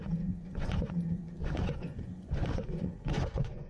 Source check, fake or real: fake